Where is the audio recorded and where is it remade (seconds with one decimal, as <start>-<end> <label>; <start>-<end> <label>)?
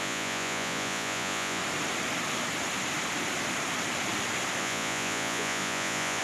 0.0-1.6 remade; 1.6-4.6 recorded; 4.6-6.2 remade